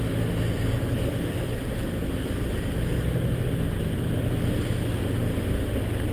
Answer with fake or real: real